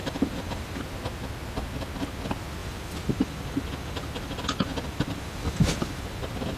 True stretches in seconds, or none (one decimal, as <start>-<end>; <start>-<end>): 0.8-2.6